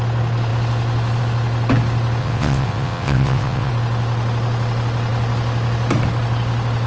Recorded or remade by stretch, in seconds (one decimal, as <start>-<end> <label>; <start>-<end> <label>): 0.0-2.2 recorded; 2.2-3.7 remade; 3.7-6.9 recorded